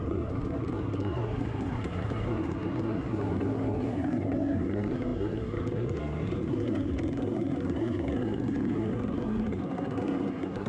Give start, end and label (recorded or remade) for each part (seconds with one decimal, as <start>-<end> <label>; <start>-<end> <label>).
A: 0.0-10.7 remade